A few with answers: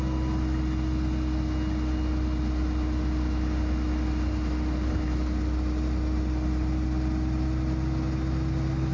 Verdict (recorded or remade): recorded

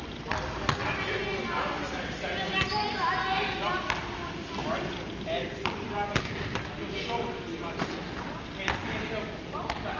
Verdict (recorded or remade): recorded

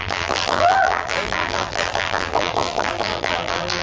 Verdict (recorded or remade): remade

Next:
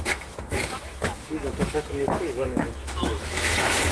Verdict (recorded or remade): remade